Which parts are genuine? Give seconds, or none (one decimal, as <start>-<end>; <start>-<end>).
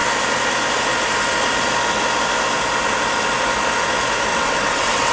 0.0-4.3